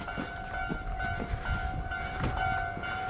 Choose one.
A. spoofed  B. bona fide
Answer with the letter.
B